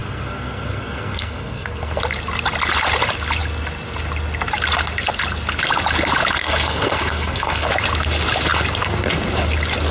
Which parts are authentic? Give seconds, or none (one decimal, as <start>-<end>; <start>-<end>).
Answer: 2.0-6.4; 7.7-9.9